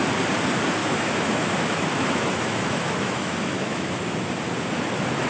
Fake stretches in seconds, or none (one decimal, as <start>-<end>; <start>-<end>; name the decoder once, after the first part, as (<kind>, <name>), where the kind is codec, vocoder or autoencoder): 0.8-4.0 (autoencoder, DAC-VAE)